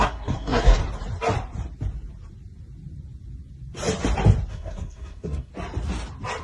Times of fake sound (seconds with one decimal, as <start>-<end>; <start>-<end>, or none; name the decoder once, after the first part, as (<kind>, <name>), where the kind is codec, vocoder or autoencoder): 0.0-0.8 (codec, SNAC); 4.5-5.5